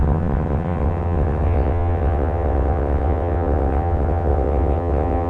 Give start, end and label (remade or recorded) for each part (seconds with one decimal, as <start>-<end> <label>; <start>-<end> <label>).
0.0-5.3 remade